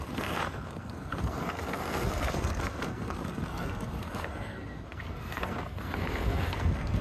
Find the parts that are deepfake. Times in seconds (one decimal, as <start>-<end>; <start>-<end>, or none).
0.0-7.0

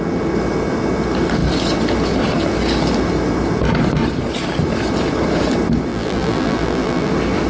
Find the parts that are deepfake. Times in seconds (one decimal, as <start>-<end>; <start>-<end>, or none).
5.9-7.1

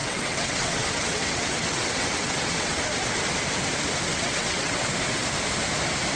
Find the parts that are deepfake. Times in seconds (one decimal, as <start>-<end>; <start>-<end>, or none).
0.0-2.8; 4.1-4.8

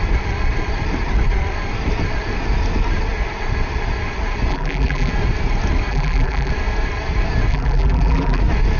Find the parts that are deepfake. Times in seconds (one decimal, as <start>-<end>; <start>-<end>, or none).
4.5-5.1; 5.9-6.5; 7.5-8.4